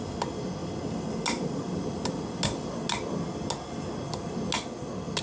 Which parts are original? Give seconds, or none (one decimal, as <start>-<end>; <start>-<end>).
0.0-5.2